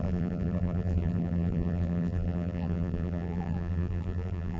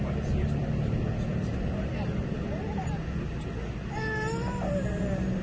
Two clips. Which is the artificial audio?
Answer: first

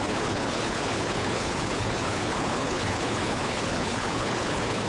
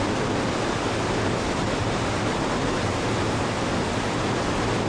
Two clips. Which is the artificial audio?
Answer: first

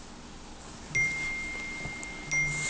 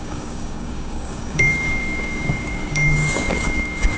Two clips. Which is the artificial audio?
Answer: second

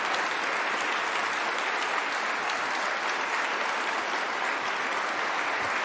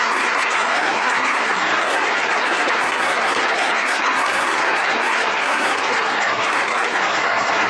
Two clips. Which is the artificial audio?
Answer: second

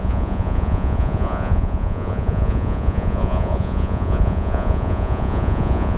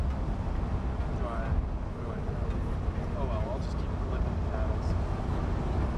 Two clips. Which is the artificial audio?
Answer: first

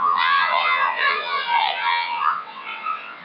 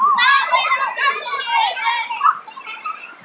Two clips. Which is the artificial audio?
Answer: first